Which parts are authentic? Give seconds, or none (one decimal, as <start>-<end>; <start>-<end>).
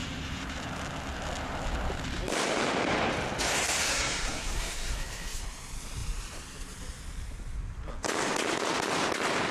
0.0-3.9; 5.4-9.5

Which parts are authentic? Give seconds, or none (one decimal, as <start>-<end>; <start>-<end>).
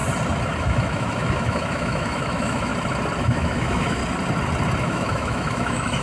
0.0-0.6; 2.7-3.2; 4.0-4.8